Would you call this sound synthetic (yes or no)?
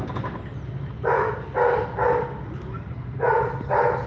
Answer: yes